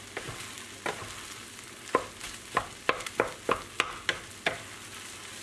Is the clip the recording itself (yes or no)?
yes